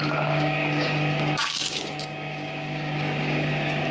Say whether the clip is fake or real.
fake